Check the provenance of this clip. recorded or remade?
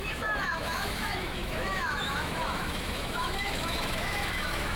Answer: remade